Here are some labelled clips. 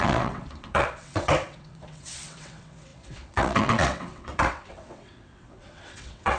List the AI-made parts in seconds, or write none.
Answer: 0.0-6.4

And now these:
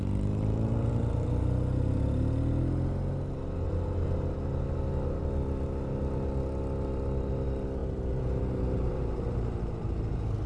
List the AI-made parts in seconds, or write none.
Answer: none

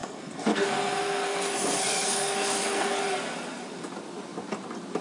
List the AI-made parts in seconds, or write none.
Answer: 0.0-3.0